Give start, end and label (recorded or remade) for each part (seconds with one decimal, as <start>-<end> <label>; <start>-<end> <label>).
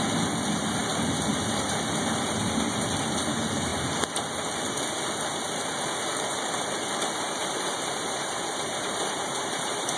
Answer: 0.0-7.4 recorded; 7.4-10.0 remade